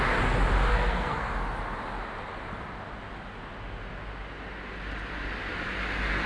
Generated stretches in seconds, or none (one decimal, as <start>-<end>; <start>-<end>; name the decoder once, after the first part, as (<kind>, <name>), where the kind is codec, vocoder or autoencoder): 0.7-1.3 (codec, SNAC)